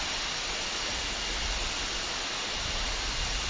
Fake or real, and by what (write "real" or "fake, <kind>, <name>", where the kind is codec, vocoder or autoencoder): real